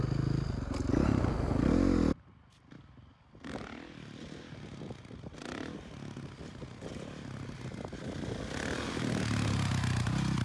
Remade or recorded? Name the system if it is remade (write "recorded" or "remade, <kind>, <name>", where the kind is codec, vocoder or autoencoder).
recorded